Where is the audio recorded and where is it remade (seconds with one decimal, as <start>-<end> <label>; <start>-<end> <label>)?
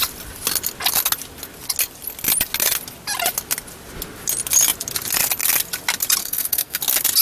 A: 0.0-6.2 recorded; 6.2-6.8 remade; 6.8-7.2 recorded